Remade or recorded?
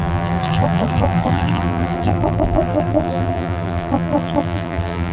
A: remade